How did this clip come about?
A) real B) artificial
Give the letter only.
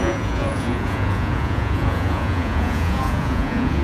B